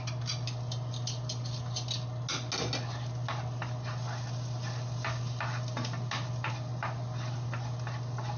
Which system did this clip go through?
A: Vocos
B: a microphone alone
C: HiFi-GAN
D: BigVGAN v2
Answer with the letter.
B